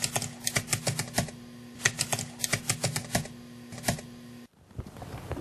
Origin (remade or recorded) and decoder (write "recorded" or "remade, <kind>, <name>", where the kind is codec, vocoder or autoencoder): recorded